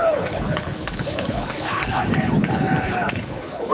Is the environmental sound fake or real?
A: fake